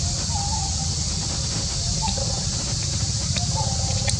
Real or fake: fake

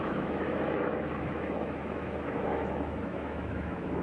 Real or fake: fake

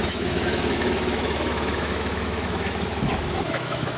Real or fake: fake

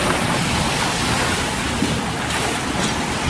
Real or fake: real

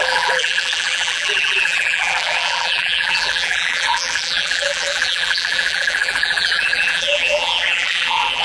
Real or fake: fake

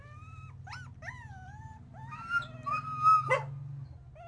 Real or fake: real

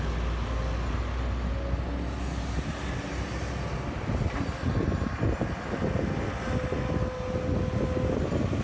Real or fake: real